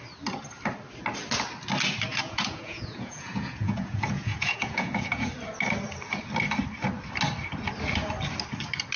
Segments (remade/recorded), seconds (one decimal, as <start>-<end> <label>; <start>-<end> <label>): 0.0-2.1 recorded; 2.1-5.3 remade; 5.3-9.0 recorded